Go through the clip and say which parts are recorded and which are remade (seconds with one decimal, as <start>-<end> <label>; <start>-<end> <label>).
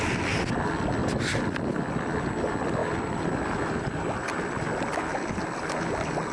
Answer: 0.0-1.0 remade; 1.0-1.9 recorded; 1.9-6.3 remade